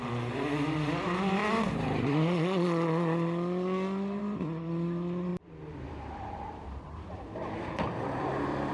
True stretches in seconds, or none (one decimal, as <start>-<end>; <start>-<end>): 1.4-4.2